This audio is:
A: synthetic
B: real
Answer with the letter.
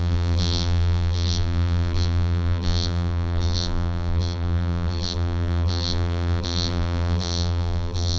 A